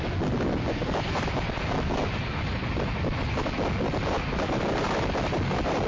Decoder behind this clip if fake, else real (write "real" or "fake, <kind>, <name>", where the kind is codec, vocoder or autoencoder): real